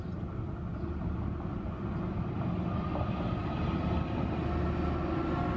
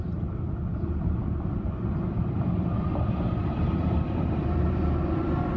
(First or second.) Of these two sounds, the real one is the first